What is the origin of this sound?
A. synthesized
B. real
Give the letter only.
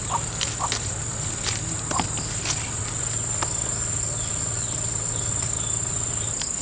B